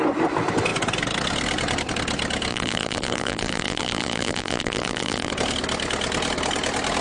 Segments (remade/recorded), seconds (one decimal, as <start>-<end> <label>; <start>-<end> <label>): 0.0-2.5 recorded; 2.5-5.3 remade; 5.3-7.0 recorded